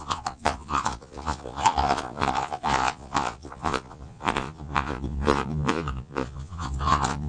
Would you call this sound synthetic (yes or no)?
yes